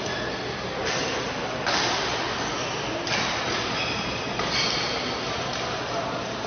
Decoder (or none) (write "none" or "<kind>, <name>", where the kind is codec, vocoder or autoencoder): none